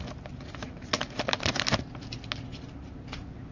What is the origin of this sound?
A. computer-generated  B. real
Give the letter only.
B